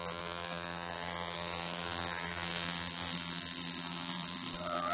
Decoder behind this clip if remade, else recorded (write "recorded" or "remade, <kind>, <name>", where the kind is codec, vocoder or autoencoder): remade, vocoder, BigVGAN v2